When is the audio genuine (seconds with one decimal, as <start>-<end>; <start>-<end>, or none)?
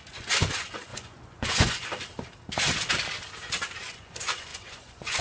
1.9-3.8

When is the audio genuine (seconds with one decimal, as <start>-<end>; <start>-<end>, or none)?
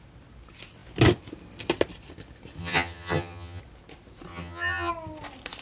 0.0-2.6; 3.6-4.3; 4.9-5.6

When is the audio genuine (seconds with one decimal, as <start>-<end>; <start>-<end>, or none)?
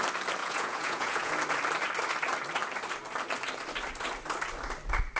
0.0-0.4; 1.3-5.2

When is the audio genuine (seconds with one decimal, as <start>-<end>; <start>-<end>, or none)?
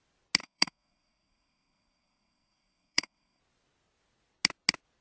0.0-0.4; 3.4-5.0